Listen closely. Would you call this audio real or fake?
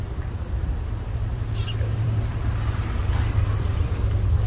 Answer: fake